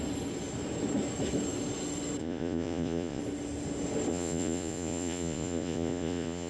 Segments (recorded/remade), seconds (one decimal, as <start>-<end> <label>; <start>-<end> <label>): 0.0-2.2 recorded; 2.2-3.2 remade; 3.2-4.1 recorded; 4.1-6.5 remade